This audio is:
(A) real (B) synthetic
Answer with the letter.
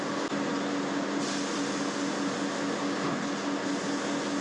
A